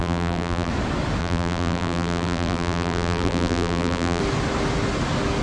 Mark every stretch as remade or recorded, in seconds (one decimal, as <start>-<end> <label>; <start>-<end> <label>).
0.0-0.7 remade; 0.7-1.2 recorded; 1.2-4.2 remade; 4.2-5.4 recorded